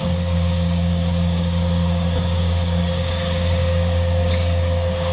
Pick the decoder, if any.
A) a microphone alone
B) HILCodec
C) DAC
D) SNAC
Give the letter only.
C